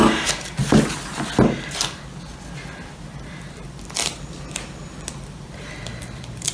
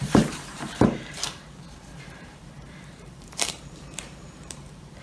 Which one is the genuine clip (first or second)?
first